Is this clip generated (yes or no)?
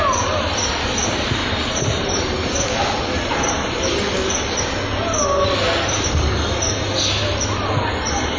no